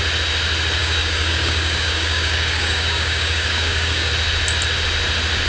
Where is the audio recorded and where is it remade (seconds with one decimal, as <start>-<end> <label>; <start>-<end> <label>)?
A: 0.0-0.8 recorded; 0.8-4.1 remade; 4.1-5.5 recorded